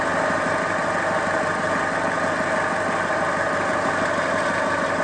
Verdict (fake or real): real